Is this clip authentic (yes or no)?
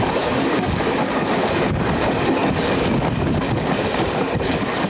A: no